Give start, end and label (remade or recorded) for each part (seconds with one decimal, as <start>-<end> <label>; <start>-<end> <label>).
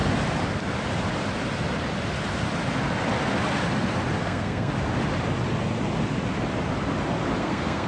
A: 0.0-4.2 recorded; 4.2-4.7 remade; 4.7-7.4 recorded; 7.4-7.9 remade